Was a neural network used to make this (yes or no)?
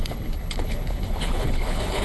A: yes